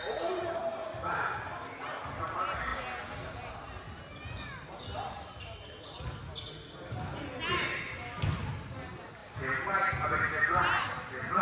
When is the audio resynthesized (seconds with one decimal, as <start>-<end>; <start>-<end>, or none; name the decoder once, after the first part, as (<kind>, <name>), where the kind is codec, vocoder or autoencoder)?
none